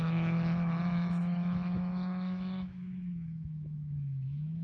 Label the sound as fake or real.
fake